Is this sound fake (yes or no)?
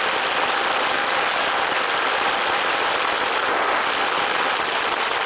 no